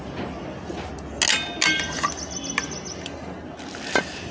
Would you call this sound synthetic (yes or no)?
no